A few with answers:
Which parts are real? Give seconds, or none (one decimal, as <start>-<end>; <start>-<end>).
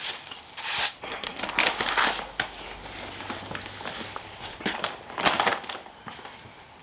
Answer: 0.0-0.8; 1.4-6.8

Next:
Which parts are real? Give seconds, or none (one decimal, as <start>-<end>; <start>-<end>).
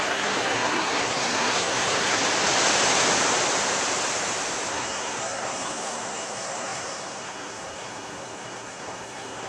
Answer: 2.2-4.7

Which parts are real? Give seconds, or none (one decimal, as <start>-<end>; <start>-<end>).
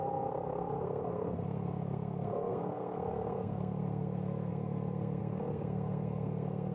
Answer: none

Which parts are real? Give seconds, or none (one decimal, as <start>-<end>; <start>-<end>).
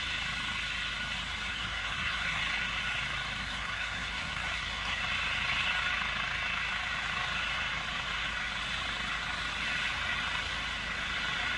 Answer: 0.0-1.5; 2.4-3.4; 5.0-11.6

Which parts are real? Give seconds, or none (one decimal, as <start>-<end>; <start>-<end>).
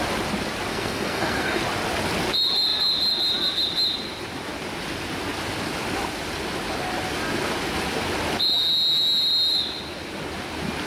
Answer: 0.0-0.7; 1.6-10.9